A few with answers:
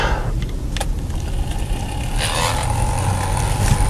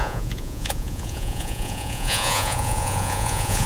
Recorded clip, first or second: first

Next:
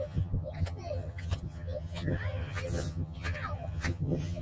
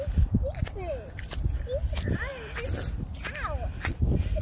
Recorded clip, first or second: second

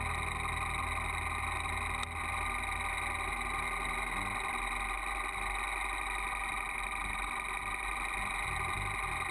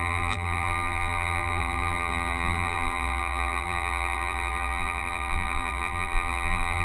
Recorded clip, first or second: first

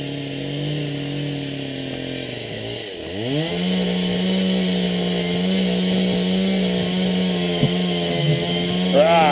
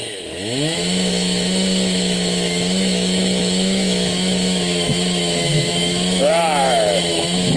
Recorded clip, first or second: first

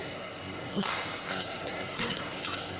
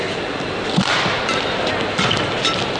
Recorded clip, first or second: second